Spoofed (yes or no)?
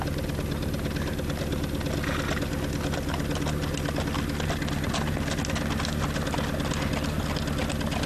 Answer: no